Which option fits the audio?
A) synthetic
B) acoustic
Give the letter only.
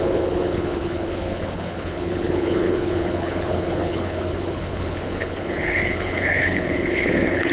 A